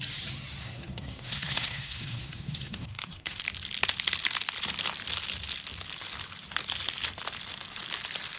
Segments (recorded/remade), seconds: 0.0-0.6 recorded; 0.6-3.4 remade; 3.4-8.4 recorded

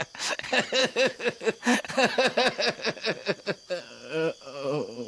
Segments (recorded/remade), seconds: 0.0-0.8 recorded; 0.8-1.6 remade; 1.6-5.1 recorded

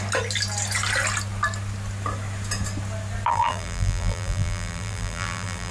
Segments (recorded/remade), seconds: 0.0-3.3 recorded; 3.3-5.7 remade